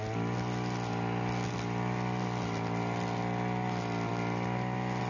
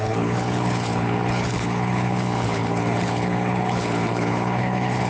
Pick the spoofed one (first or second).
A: second